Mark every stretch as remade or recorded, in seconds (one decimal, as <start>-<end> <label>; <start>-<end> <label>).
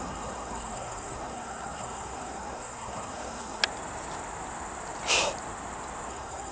0.0-3.6 remade; 3.6-6.1 recorded; 6.1-6.5 remade